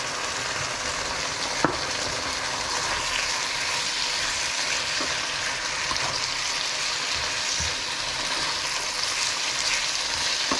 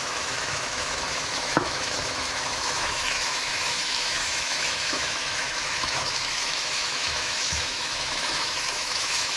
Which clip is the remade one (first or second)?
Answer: second